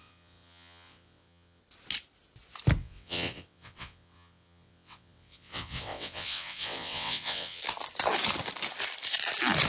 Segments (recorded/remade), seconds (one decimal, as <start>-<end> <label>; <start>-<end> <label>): 0.0-1.6 remade; 1.6-2.8 recorded; 2.8-7.6 remade; 7.6-9.7 recorded